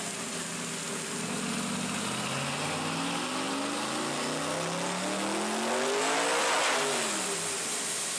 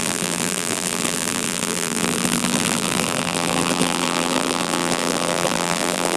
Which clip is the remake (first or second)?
second